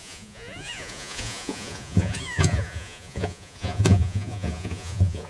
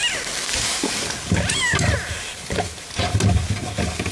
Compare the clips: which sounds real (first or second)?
second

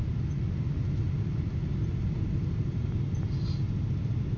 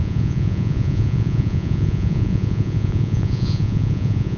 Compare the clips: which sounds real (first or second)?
first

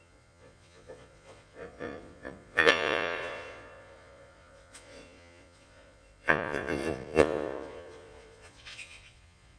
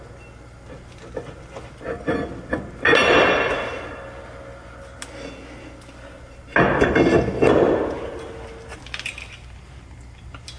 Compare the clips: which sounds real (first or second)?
second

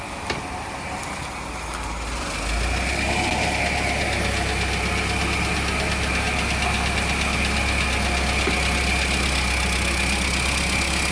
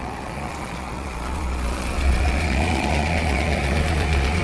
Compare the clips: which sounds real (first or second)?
first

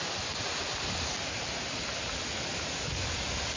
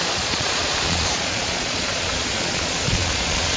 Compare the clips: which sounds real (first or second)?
first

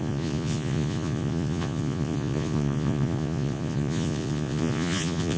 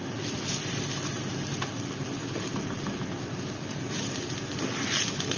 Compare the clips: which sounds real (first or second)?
second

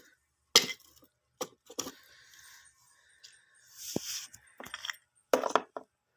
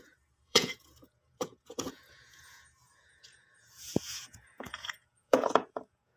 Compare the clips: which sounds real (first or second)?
first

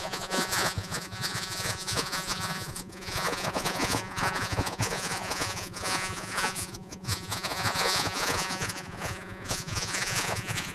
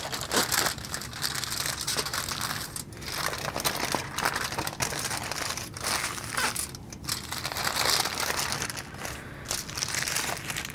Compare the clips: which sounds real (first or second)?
second